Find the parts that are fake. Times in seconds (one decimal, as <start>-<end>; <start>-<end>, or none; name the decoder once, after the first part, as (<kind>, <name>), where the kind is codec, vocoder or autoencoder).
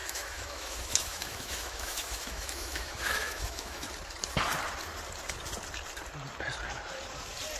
0.0-3.9 (autoencoder, DAC-VAE)